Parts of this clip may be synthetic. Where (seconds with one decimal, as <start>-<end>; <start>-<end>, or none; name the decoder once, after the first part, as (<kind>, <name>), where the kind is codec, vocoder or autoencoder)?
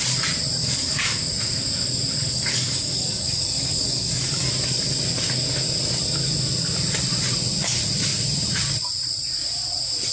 0.6-1.2 (codec, DAC); 2.3-4.5